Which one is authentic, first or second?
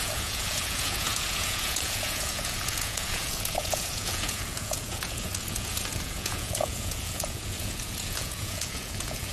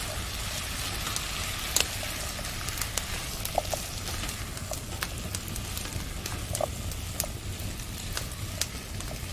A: second